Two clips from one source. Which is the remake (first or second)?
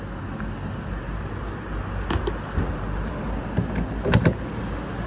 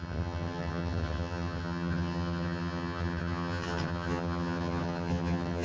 second